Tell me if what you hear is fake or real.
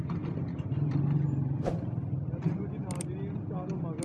real